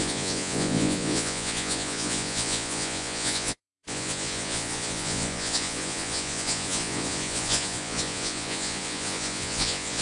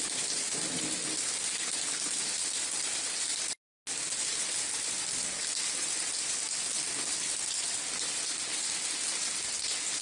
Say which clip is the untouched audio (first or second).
second